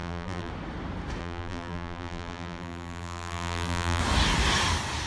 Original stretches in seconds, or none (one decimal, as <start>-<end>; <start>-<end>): 0.5-1.2; 4.0-5.1